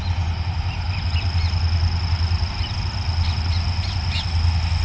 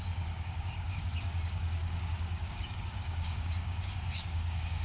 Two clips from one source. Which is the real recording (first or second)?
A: first